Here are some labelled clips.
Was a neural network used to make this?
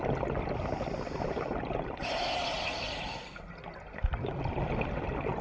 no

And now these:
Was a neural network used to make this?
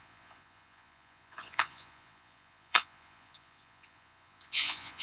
yes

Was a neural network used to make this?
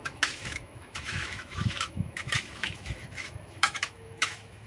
yes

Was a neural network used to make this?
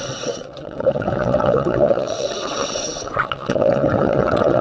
yes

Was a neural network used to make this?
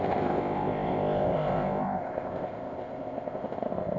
yes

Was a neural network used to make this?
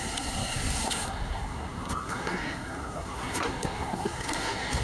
yes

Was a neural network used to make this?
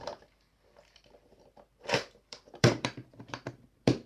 yes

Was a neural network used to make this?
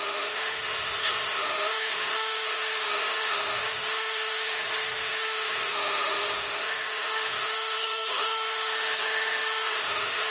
yes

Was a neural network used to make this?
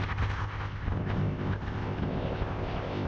yes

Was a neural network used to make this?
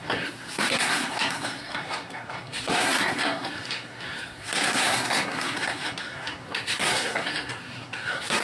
yes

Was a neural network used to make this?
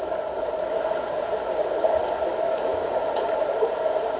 no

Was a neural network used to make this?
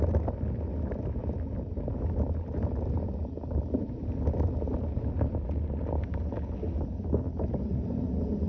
no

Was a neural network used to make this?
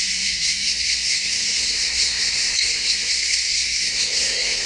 yes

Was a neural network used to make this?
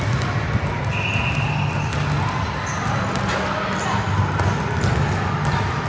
no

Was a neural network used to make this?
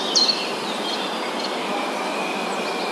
no